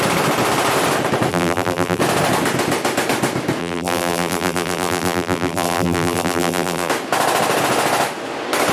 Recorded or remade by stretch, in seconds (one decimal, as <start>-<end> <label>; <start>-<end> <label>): 0.0-1.3 recorded; 1.3-2.0 remade; 2.0-3.6 recorded; 3.6-6.9 remade; 6.9-8.7 recorded